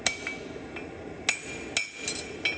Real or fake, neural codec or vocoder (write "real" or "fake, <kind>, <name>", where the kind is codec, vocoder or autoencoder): real